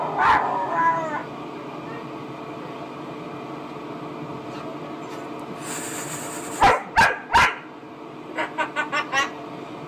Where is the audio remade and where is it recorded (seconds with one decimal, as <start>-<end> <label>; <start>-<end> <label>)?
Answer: 0.0-9.9 recorded